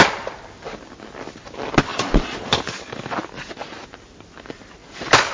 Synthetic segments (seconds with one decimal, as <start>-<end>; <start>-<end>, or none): 1.9-2.9